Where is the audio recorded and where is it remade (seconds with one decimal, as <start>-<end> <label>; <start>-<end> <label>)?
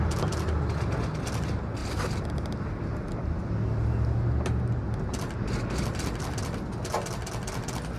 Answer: 0.0-8.0 recorded